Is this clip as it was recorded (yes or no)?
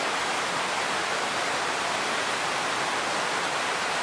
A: yes